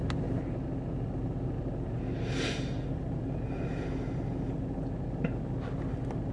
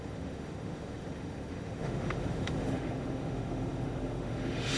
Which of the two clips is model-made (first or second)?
second